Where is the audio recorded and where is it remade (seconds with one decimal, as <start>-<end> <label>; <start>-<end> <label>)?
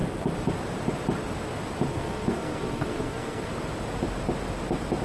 0.0-1.9 recorded; 1.9-3.5 remade; 3.5-5.0 recorded